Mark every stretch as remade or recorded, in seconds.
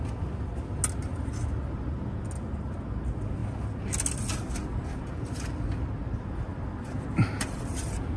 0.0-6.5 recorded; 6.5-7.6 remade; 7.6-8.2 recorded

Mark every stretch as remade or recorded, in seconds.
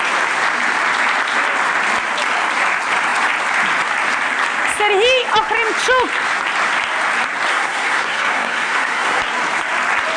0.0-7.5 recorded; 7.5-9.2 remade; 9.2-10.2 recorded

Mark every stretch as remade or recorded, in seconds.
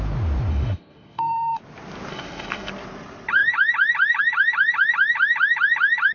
0.0-0.5 recorded; 0.5-1.6 remade; 1.6-2.1 recorded; 2.1-2.7 remade; 2.7-6.1 recorded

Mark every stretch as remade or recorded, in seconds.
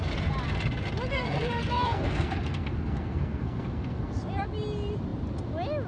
0.0-1.1 recorded; 1.1-4.2 remade; 4.2-5.9 recorded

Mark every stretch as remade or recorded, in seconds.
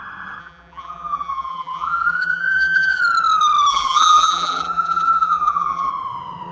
0.0-0.4 recorded; 0.4-3.0 remade; 3.0-3.7 recorded; 3.7-5.9 remade; 5.9-6.5 recorded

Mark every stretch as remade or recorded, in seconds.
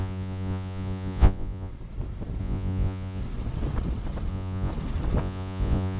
0.0-1.7 remade; 1.7-2.4 recorded; 2.4-3.2 remade; 3.2-4.3 recorded; 4.3-4.7 remade; 4.7-5.2 recorded; 5.2-6.0 remade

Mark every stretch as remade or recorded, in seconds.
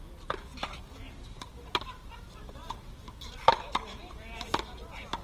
0.0-2.6 recorded; 2.6-3.1 remade; 3.1-5.2 recorded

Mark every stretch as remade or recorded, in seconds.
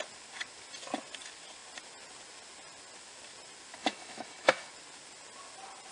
0.0-3.8 recorded; 3.8-4.7 remade; 4.7-5.9 recorded